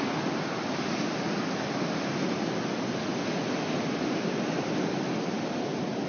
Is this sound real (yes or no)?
yes